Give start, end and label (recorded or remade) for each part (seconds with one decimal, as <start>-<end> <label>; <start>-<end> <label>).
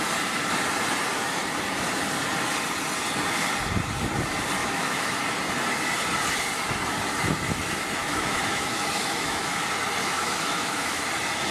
0.0-4.6 recorded; 4.6-5.2 remade; 5.2-8.0 recorded; 8.0-9.5 remade; 9.5-10.0 recorded; 10.0-11.0 remade; 11.0-11.5 recorded